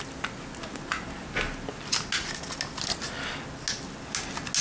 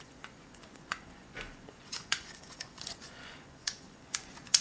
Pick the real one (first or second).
first